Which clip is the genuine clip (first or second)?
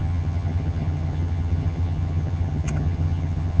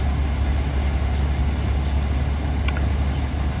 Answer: second